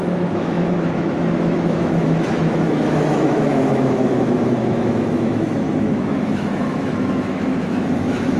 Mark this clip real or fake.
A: fake